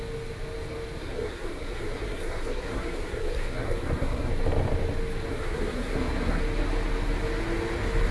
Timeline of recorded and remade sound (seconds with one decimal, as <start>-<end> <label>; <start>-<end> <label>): 0.0-1.0 recorded; 1.0-4.3 remade; 4.3-5.3 recorded; 5.3-6.4 remade; 6.4-8.1 recorded